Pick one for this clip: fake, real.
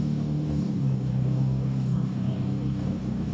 fake